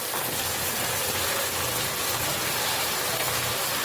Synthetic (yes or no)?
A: no